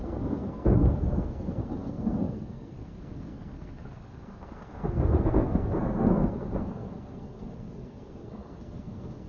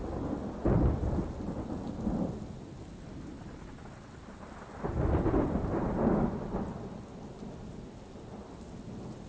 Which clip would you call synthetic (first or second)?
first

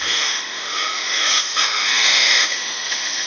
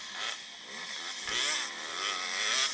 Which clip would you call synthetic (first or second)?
first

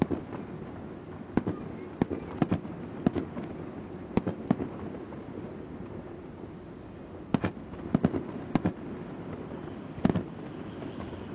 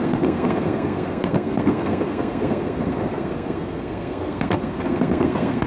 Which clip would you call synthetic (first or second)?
second